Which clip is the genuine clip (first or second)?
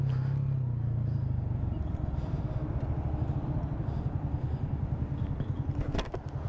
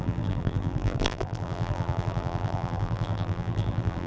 first